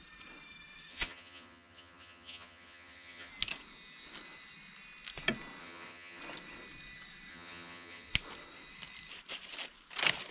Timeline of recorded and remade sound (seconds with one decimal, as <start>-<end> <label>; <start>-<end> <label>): 0.0-0.9 recorded; 0.9-3.3 remade; 3.3-5.6 recorded; 5.6-6.2 remade; 6.2-7.3 recorded; 7.3-8.1 remade; 8.1-10.3 recorded